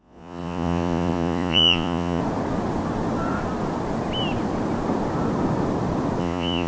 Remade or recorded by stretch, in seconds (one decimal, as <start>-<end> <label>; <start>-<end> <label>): 0.0-2.2 remade; 2.2-6.2 recorded; 6.2-6.7 remade